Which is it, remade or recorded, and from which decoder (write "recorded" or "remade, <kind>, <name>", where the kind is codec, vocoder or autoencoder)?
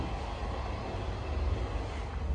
recorded